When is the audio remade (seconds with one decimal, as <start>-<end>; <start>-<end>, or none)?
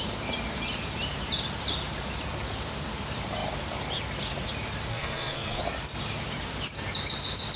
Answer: 4.9-5.6